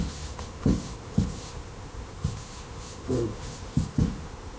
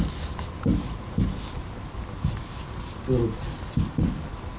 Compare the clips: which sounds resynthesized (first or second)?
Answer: first